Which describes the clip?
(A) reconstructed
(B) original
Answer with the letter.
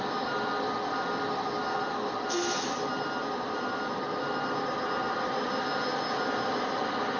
B